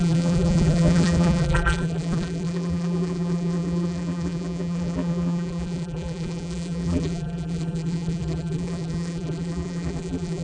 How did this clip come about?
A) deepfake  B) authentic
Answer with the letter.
A